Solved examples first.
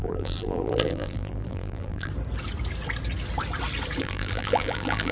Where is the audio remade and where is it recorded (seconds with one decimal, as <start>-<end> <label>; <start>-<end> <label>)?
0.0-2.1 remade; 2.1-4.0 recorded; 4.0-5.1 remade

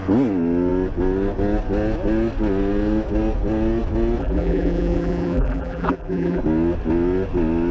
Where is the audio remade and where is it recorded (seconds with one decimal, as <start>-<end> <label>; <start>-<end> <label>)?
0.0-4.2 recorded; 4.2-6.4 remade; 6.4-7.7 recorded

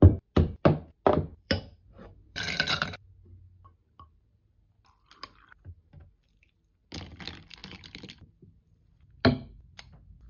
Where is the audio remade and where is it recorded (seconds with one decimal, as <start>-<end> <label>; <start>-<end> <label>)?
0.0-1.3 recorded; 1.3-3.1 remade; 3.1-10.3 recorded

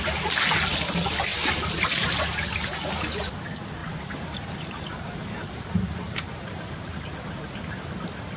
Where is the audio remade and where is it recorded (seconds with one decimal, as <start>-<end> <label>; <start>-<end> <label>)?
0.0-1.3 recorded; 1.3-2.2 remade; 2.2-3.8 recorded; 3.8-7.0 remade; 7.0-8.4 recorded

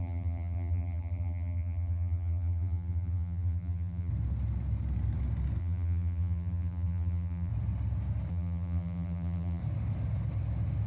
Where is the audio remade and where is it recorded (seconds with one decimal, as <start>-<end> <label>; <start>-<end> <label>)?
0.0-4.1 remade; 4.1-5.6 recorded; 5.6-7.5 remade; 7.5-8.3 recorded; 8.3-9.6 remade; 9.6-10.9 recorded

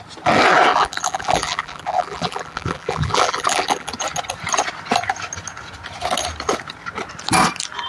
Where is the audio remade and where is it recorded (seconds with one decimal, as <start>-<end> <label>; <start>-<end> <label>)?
0.0-0.7 recorded; 0.7-3.9 remade; 3.9-7.9 recorded